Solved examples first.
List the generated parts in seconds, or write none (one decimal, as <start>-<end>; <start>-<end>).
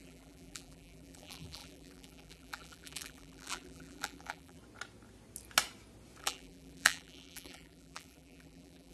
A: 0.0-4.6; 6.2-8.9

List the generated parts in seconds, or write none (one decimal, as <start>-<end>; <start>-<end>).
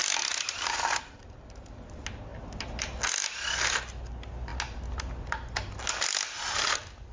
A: 2.3-2.9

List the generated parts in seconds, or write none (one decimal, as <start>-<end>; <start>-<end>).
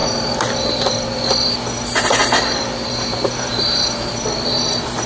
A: 0.0-1.3; 2.2-4.6